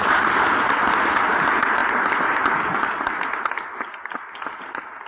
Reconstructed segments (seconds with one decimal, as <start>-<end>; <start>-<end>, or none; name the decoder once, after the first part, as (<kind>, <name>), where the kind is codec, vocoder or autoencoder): none